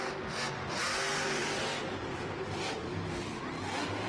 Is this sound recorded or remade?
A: recorded